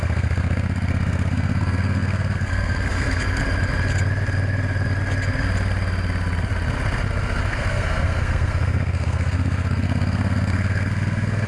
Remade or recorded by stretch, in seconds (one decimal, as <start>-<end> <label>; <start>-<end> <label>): 0.0-3.4 remade; 3.4-7.4 recorded; 7.4-11.5 remade